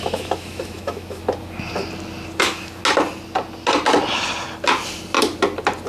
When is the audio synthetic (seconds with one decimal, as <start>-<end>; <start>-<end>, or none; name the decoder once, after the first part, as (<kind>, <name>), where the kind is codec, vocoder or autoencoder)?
0.0-1.2 (autoencoder, DAC-VAE); 2.4-2.8